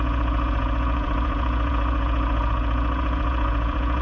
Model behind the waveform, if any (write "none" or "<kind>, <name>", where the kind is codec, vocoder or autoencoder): vocoder, Vocos